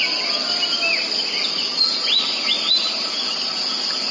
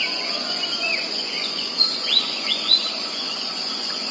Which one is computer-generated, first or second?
second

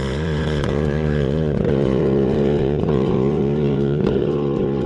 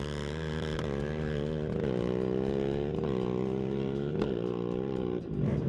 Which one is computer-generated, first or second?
first